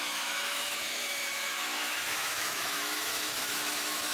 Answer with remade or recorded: remade